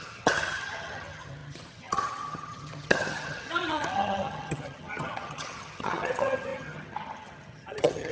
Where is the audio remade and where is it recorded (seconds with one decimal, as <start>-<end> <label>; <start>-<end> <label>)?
0.0-8.1 remade